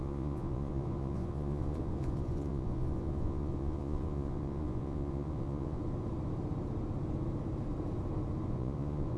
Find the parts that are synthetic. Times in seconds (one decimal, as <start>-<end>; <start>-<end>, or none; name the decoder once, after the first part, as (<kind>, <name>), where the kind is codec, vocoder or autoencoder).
0.0-5.8 (vocoder, Vocos); 8.5-9.2